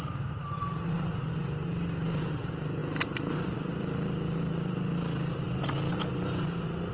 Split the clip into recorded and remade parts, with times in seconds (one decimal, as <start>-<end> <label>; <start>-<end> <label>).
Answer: 0.0-6.9 recorded